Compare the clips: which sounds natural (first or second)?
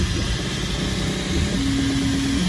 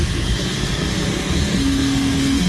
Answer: first